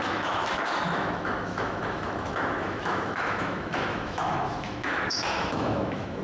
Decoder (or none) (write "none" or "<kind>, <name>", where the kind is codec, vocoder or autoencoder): autoencoder, DAC-VAE